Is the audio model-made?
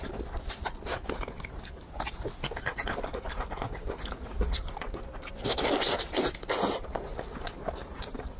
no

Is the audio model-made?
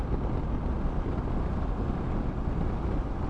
no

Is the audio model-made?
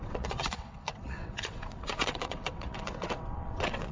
yes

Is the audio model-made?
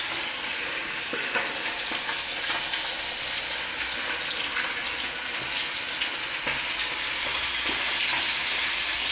no